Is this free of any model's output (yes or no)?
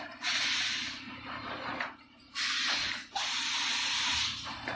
yes